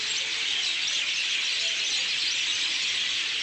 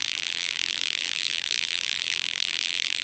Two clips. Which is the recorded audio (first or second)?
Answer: first